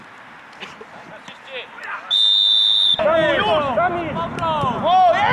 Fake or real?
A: real